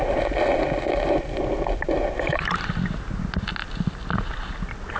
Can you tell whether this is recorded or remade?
recorded